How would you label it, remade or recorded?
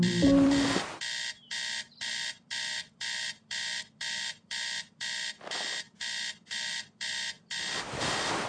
remade